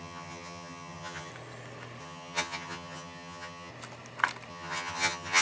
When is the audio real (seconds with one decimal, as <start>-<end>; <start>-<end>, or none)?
1.3-2.0; 3.7-4.5